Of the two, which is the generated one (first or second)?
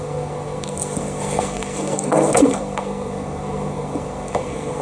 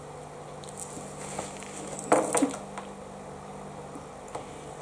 first